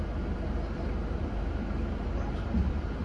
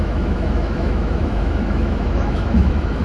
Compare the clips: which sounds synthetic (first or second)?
second